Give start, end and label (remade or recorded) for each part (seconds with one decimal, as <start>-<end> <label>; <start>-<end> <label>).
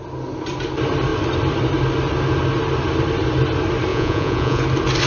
0.0-3.9 recorded; 3.9-4.6 remade; 4.6-5.1 recorded